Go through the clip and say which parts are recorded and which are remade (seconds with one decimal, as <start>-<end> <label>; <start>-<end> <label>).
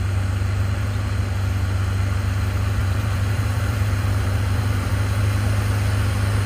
0.0-2.8 recorded; 2.8-4.9 remade; 4.9-6.5 recorded